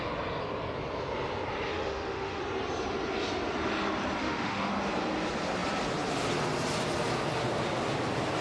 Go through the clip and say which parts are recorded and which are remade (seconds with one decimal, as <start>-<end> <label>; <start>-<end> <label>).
0.0-1.7 recorded; 1.7-2.4 remade; 2.4-4.2 recorded; 4.2-4.7 remade; 4.7-8.4 recorded